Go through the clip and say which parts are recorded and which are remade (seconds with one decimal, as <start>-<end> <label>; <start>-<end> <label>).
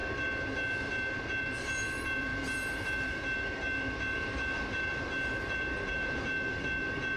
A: 0.0-7.2 remade